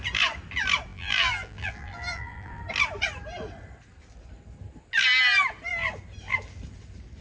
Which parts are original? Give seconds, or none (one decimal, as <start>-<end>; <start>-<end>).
0.0-0.9; 2.6-7.2